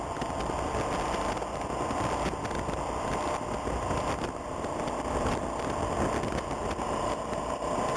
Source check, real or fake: real